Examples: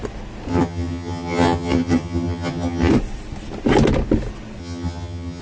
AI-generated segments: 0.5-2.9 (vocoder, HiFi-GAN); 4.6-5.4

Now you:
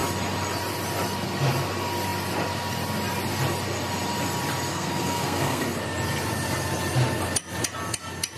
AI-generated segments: 4.7-5.6 (codec, SNAC)

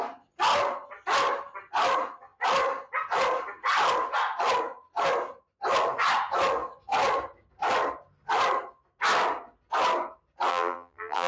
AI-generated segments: 10.5-11.3 (vocoder, BigVGAN v2)

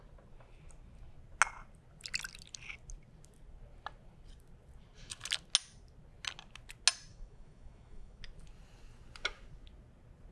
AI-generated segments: 7.1-8.2 (autoencoder, DAC-VAE)